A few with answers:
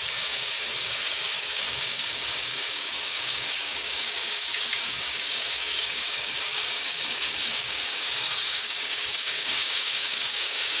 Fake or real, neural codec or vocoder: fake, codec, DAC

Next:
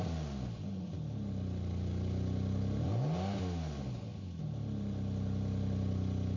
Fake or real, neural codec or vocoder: real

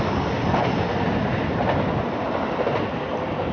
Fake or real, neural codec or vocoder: real